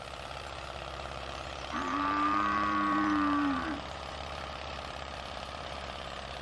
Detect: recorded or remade remade